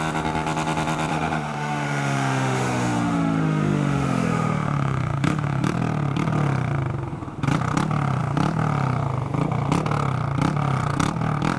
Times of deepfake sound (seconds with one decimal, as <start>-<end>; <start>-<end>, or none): 1.1-5.7